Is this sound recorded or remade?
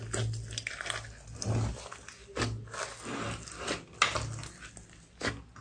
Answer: recorded